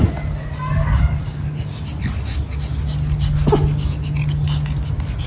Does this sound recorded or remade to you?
recorded